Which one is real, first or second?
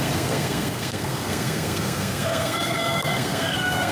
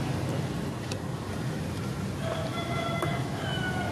second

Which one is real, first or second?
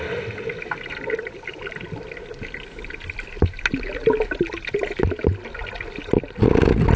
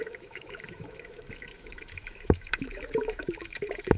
first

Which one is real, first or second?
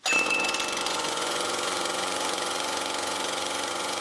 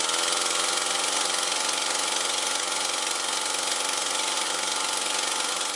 second